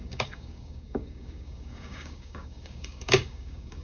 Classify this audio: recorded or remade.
remade